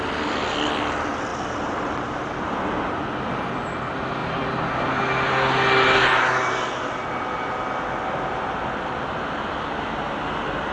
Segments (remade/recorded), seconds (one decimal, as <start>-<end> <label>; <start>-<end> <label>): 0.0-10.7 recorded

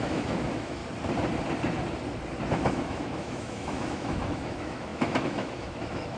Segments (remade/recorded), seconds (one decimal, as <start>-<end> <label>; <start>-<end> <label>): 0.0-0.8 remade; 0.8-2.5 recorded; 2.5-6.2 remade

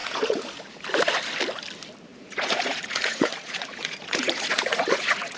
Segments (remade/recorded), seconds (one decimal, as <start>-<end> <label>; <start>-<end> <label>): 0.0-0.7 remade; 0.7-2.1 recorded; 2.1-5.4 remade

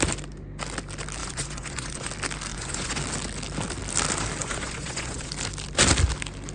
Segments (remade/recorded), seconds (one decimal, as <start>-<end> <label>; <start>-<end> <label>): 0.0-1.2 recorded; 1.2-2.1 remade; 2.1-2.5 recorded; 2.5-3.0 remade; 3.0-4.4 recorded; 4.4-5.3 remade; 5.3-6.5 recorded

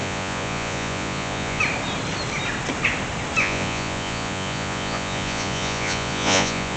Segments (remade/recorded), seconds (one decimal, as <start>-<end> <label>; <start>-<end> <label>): 0.0-1.6 remade; 1.6-3.4 recorded; 3.4-6.8 remade

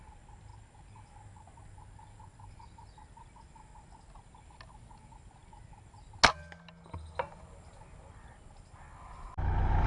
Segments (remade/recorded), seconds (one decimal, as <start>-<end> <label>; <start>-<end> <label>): 0.0-9.9 recorded

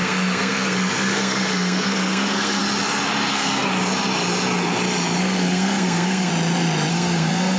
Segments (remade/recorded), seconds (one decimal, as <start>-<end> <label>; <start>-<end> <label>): 0.0-2.6 remade; 2.6-3.3 recorded; 3.3-3.7 remade; 3.7-5.2 recorded; 5.2-6.3 remade; 6.3-6.9 recorded; 6.9-7.6 remade